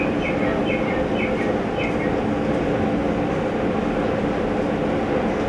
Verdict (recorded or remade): recorded